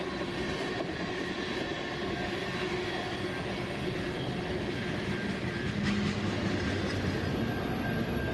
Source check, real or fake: real